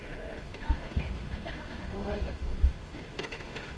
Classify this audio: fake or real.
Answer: fake